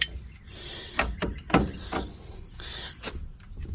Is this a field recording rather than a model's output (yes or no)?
yes